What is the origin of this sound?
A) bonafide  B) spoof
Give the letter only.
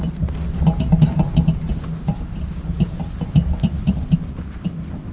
A